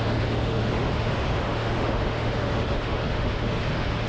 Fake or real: fake